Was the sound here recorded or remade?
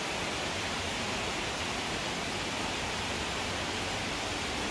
recorded